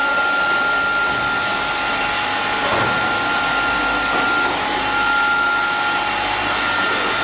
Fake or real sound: real